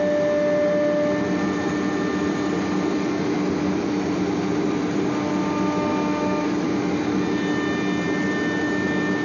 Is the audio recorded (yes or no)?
yes